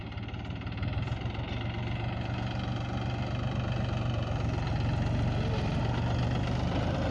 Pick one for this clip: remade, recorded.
recorded